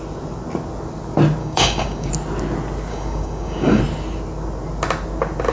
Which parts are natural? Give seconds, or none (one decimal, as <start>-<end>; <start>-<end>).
0.0-1.4; 2.1-2.9; 3.8-5.5